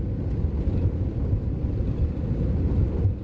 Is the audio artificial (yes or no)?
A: no